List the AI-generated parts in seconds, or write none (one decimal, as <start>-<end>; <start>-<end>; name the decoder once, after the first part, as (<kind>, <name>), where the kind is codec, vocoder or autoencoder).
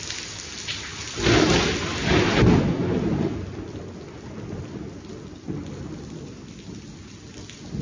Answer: none